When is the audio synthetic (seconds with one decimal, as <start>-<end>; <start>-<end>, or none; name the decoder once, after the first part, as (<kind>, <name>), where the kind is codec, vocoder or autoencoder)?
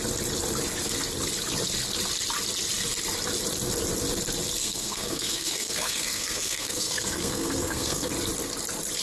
4.6-8.1 (codec, SNAC)